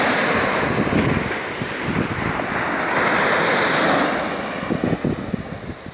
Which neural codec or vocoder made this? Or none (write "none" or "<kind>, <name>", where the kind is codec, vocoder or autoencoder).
none